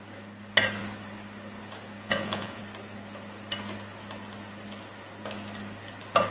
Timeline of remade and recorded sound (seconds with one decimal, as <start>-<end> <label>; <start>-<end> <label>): 0.0-2.0 recorded; 2.0-2.6 remade; 2.6-6.3 recorded